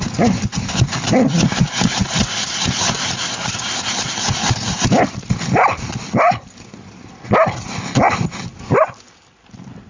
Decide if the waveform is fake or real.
real